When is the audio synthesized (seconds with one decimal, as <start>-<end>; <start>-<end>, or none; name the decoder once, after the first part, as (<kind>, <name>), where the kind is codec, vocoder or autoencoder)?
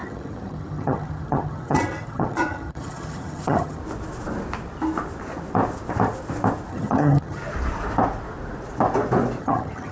0.0-3.8 (vocoder, HiFi-GAN); 6.7-7.4; 9.4-9.9